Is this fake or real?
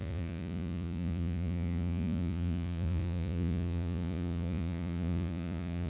fake